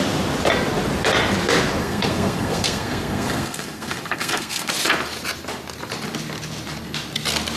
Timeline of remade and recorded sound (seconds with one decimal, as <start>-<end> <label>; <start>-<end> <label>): 0.0-1.8 recorded; 1.8-4.7 remade; 4.7-7.6 recorded